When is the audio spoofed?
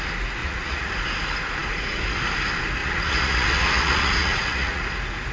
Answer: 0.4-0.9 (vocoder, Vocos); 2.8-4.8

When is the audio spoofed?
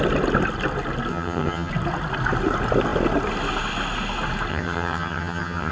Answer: 1.1-1.7 (vocoder, HiFi-GAN); 4.5-5.7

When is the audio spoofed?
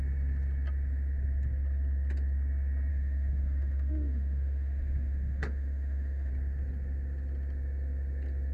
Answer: 2.9-6.3 (autoencoder, DAC-VAE)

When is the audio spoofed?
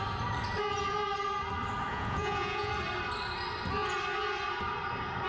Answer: 1.9-2.7 (vocoder, Vocos)